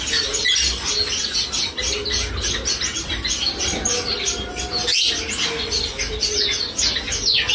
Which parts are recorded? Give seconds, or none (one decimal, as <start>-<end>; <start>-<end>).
0.0-7.5